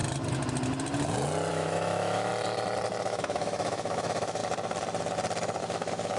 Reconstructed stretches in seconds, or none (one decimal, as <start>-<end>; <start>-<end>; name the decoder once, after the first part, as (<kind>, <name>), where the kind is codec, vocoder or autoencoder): 1.5-2.3 (autoencoder, DAC-VAE); 3.0-4.4; 5.6-6.2